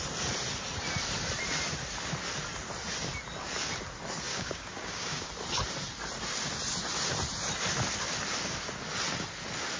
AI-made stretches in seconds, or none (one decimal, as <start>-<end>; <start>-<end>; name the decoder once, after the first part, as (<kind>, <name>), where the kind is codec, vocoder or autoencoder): 4.3-5.3 (codec, DAC)